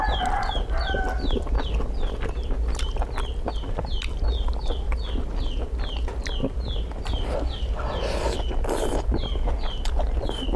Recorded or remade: recorded